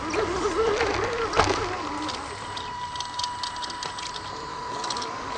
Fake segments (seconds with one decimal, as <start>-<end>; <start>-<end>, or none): 4.5-5.4